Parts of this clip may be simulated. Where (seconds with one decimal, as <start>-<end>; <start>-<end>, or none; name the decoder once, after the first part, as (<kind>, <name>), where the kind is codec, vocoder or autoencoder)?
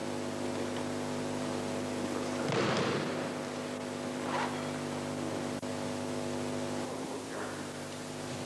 none